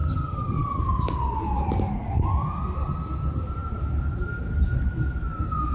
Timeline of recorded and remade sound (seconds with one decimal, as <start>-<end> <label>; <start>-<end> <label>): 0.0-0.8 remade; 0.8-5.7 recorded